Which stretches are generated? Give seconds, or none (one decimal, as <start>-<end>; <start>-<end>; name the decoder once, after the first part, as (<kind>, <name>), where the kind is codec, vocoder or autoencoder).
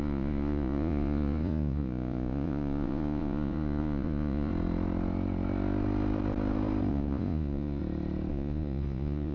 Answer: 0.0-4.5 (vocoder, Vocos); 6.9-7.8; 8.3-9.3